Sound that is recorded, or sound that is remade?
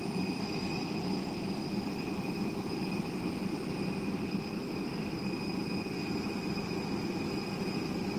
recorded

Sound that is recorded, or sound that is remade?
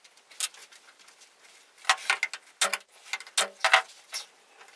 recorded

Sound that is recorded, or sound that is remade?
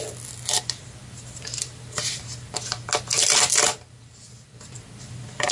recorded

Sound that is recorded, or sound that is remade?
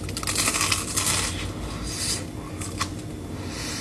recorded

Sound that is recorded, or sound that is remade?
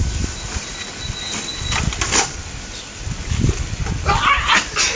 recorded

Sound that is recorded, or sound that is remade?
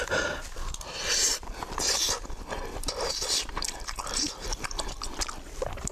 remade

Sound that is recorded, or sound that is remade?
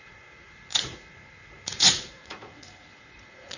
remade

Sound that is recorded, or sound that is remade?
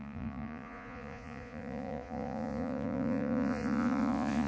remade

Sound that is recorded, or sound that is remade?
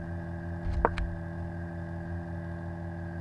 recorded